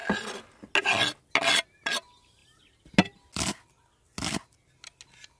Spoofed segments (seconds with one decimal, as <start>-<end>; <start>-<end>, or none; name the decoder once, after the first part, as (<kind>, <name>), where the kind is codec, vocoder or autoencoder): none